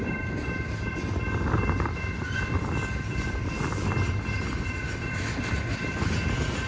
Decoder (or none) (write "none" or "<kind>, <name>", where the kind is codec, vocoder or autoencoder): none